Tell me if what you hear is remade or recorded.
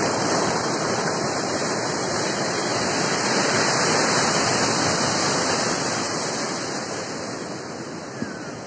recorded